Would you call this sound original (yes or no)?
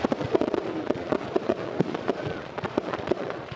no